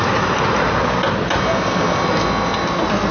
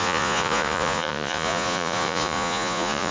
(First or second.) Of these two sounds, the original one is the first